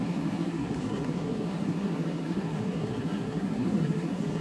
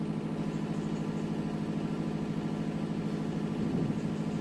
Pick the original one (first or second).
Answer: second